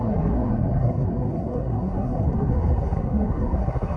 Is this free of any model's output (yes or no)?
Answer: no